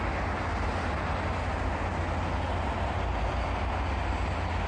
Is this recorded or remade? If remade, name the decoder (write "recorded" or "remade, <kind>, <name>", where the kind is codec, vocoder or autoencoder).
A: recorded